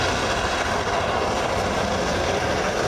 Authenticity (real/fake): real